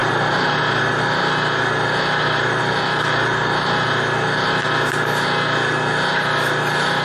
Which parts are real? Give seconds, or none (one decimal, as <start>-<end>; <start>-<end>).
0.0-7.0